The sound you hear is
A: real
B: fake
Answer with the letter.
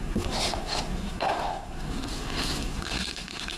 B